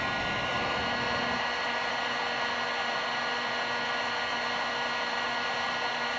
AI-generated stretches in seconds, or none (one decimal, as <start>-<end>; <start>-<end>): none